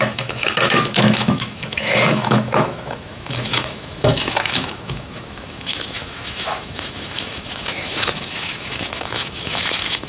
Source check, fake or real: fake